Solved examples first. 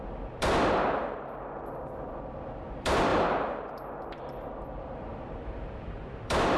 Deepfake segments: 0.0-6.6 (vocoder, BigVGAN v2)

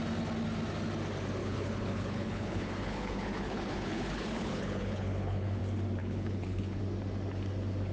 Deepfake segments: 1.4-5.6 (codec, HILCodec); 6.0-6.8

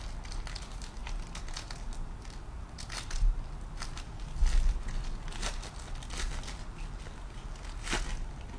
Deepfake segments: none

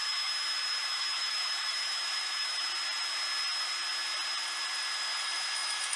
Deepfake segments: 0.0-2.7 (autoencoder, DAC-VAE); 5.2-6.0

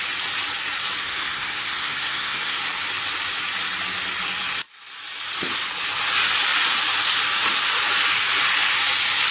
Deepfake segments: 1.0-2.6 (codec, SNAC)